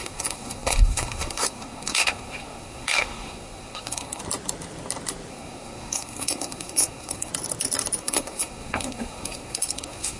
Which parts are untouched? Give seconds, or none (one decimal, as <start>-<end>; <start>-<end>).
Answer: 4.2-5.3; 7.3-8.0